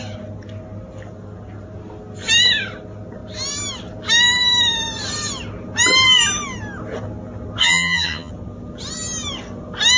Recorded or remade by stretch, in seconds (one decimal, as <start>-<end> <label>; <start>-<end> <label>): 0.0-7.6 recorded; 7.6-8.3 remade; 8.3-10.0 recorded